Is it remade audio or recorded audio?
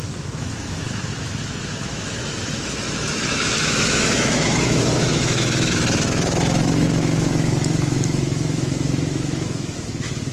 remade